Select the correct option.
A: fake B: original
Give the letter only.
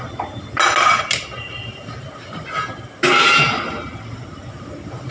B